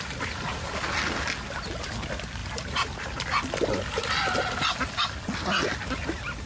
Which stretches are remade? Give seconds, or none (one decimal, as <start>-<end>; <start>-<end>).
none

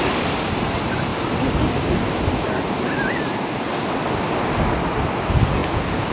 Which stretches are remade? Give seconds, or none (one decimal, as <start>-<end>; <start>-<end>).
none

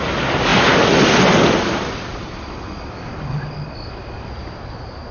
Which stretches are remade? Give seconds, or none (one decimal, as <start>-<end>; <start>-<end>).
none

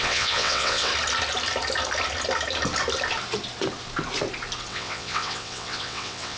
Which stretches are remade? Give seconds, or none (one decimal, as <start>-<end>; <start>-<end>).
0.0-0.9; 4.7-6.4

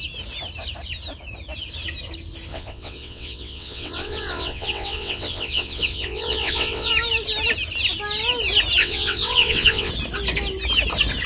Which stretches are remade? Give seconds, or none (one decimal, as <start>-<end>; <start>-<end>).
2.5-6.9; 8.8-9.9

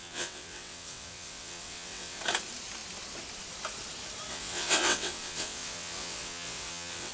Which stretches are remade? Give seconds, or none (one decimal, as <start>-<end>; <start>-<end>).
0.0-2.2; 4.3-7.1